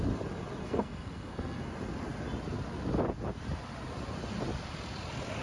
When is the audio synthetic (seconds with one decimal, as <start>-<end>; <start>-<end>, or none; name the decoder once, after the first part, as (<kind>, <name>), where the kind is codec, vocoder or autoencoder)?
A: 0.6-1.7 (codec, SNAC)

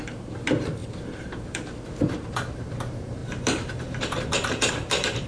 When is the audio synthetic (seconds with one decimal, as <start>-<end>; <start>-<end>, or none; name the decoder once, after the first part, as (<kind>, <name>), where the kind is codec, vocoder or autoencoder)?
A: 0.0-5.3 (vocoder, BigVGAN v2)

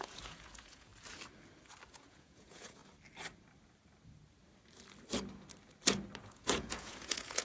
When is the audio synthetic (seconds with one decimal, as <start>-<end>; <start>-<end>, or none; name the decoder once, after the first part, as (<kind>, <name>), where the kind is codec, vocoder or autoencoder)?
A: 0.0-0.9 (vocoder, Vocos); 1.9-2.8; 6.2-7.4

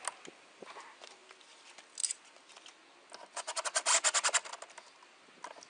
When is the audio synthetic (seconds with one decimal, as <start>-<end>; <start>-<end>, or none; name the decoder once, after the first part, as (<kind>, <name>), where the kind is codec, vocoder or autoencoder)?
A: none